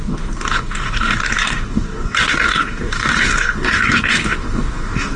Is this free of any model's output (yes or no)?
no